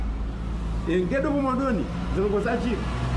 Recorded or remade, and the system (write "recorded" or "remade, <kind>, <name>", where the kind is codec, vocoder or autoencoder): recorded